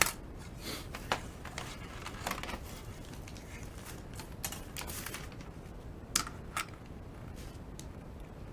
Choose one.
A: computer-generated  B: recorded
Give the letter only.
B